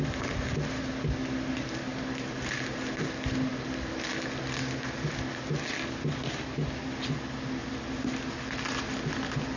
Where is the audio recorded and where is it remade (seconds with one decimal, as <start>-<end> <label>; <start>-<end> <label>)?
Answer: 0.0-9.6 recorded